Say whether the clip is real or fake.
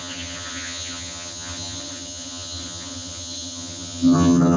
fake